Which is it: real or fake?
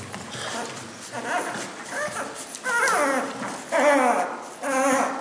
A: real